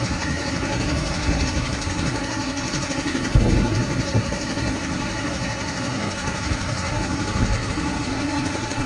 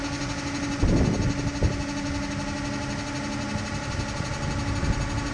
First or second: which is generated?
first